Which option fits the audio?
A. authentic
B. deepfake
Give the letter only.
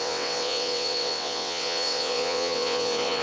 B